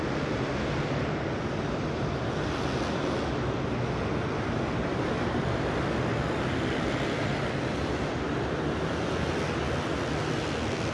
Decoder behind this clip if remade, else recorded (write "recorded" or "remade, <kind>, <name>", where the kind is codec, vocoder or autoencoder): recorded